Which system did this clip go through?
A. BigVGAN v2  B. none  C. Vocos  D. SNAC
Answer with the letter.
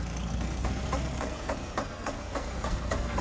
D